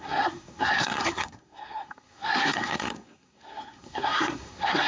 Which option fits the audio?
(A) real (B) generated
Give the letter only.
B